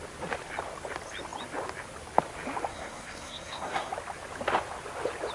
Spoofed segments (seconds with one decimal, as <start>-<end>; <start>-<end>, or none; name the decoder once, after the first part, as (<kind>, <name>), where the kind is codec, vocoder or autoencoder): 2.7-3.9 (codec, SNAC)